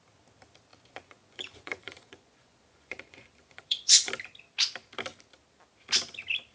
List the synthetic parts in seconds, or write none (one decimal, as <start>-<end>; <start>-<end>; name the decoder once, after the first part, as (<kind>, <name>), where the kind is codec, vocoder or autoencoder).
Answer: 0.7-4.1 (vocoder, Vocos)